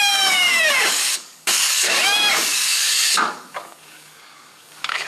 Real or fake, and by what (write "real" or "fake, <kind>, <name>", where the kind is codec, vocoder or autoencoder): fake, codec, DAC